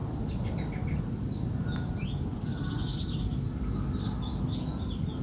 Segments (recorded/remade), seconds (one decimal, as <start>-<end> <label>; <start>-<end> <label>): 0.0-5.2 recorded